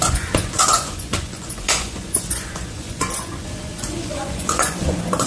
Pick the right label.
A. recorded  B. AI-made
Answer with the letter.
B